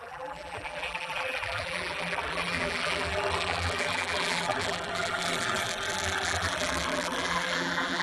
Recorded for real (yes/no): no